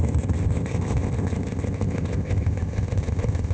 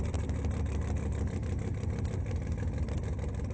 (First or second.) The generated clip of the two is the first